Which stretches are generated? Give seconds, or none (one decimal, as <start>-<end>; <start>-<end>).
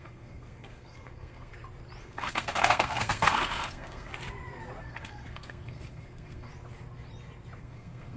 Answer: 0.0-1.5; 2.0-4.1; 4.8-6.5; 7.6-8.2